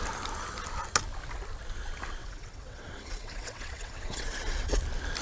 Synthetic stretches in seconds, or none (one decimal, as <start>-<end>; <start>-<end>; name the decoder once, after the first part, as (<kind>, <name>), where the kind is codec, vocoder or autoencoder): 2.2-4.8 (vocoder, WaveNeXt)